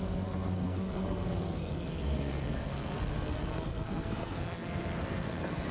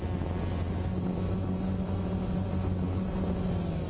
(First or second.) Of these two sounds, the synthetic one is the first